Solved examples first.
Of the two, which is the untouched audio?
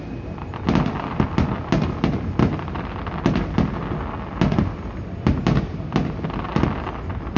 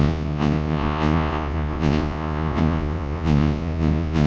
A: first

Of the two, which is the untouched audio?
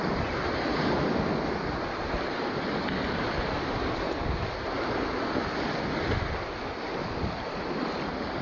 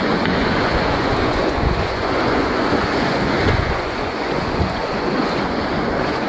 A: first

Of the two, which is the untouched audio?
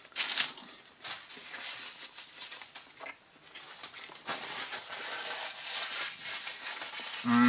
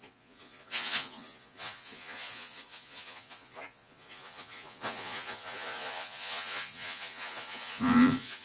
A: first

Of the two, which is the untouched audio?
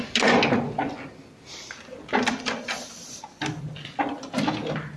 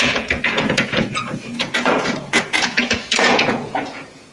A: first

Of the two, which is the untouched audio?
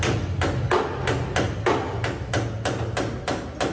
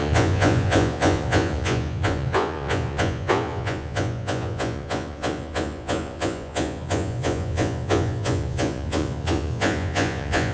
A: first